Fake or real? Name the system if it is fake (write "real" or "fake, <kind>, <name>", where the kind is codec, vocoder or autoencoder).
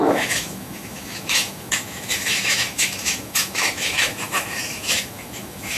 fake, autoencoder, DAC-VAE